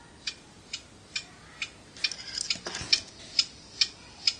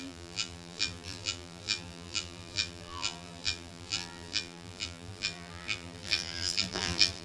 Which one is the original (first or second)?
first